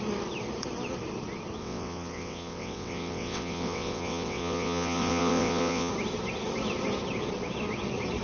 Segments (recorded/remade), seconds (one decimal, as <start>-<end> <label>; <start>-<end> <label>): 0.0-1.6 recorded; 1.6-5.9 remade; 5.9-8.2 recorded